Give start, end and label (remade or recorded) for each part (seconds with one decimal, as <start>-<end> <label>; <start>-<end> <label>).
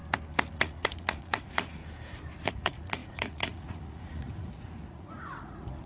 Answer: 0.0-0.5 recorded; 0.5-1.8 remade; 1.8-2.5 recorded; 2.5-5.9 remade